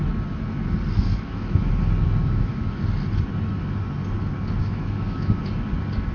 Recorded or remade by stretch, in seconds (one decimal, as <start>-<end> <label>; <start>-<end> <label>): 0.0-1.1 recorded; 1.1-1.7 remade; 1.7-2.2 recorded; 2.2-2.8 remade; 2.8-4.6 recorded; 4.6-5.4 remade; 5.4-6.1 recorded